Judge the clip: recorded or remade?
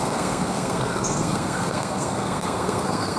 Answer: remade